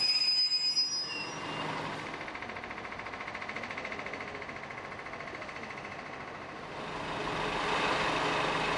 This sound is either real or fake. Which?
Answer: real